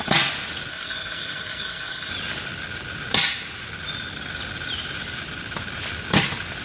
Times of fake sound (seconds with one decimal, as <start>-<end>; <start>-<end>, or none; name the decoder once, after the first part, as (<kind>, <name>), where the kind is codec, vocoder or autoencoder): 0.7-2.1 (codec, SNAC)